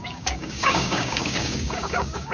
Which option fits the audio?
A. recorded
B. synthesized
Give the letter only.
B